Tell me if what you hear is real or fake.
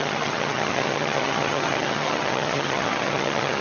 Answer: fake